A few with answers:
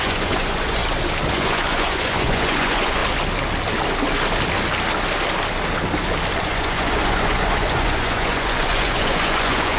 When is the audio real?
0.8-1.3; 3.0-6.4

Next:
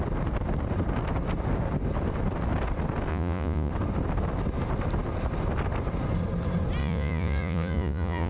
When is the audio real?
0.0-3.1; 3.7-6.8

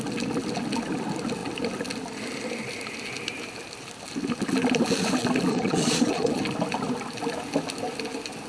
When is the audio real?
0.0-5.5; 6.4-8.5